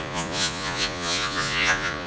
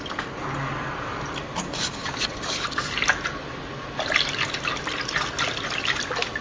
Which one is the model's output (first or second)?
first